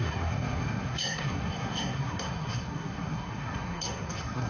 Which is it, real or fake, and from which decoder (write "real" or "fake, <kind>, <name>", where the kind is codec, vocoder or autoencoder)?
fake, codec, SNAC